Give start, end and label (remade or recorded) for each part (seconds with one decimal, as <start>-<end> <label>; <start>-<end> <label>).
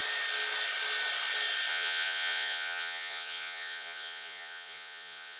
0.0-1.7 recorded; 1.7-5.4 remade